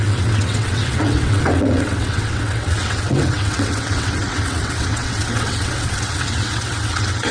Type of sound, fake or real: fake